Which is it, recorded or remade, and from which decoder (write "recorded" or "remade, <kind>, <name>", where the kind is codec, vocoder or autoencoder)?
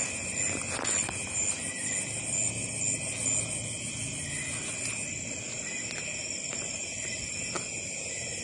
recorded